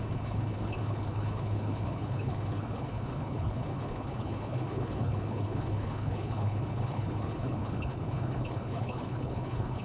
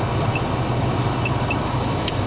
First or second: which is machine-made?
first